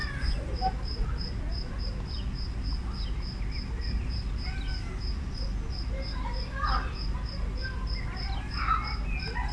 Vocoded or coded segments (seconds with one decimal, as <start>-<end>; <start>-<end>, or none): none